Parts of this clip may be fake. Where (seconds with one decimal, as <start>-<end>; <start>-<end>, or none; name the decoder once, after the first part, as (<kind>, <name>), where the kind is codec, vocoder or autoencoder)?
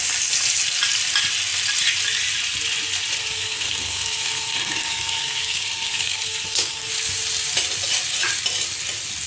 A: 3.2-6.9 (codec, SNAC)